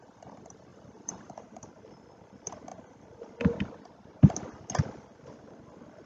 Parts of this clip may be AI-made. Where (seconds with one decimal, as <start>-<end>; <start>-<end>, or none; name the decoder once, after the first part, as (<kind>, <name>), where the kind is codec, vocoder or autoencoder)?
0.7-1.7 (vocoder, BigVGAN v2)